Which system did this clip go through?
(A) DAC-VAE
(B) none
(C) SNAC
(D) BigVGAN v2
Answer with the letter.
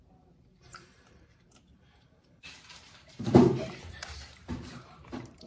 D